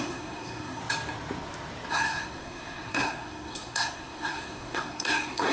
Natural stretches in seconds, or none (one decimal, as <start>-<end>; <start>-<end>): 0.8-1.9